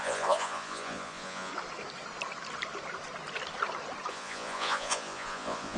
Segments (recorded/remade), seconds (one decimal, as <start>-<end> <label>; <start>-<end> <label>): 0.0-1.5 remade; 1.5-4.1 recorded; 4.1-5.8 remade